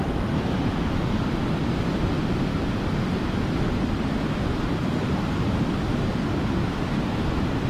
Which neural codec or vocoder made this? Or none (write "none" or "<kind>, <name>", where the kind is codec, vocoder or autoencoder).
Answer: none